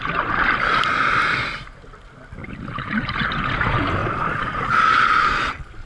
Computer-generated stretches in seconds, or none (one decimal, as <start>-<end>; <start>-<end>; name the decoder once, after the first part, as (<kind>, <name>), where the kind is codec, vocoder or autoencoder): 2.4-3.1 (vocoder, BigVGAN v2); 4.0-5.5